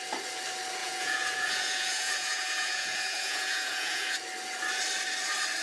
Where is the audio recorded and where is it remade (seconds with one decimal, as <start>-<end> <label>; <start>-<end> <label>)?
0.0-0.8 recorded; 0.8-4.2 remade; 4.2-5.6 recorded